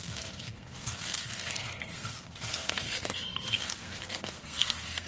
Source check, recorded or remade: remade